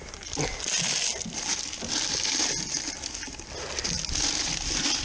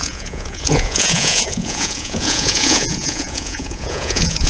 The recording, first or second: first